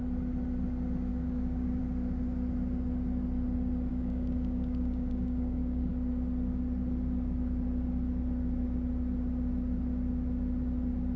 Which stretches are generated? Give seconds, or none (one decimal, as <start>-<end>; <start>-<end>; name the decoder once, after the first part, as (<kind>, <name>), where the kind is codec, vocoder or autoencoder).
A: 1.1-1.8 (codec, DAC); 3.9-5.9